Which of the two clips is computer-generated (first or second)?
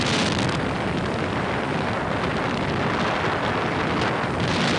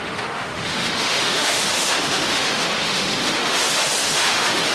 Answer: second